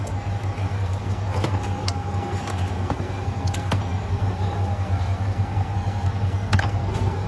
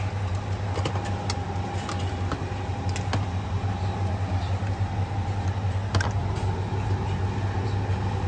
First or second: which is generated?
first